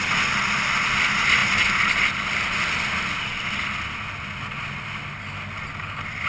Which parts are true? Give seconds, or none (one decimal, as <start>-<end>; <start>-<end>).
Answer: 0.0-6.3